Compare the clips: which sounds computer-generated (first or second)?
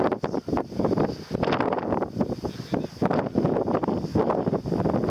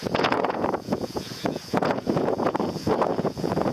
second